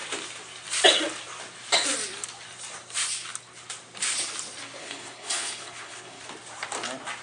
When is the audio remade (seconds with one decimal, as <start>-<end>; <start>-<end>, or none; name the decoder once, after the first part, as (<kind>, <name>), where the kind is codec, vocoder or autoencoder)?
4.8-6.2 (codec, HILCodec)